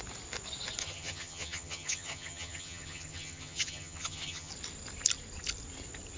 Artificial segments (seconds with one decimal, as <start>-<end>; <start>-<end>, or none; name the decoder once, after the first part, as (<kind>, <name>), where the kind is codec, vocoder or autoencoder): 0.8-4.5 (vocoder, HiFi-GAN)